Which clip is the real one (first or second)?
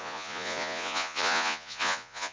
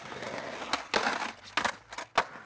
second